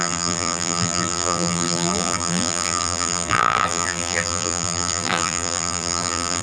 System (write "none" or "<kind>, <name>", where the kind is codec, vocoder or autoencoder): vocoder, BigVGAN v2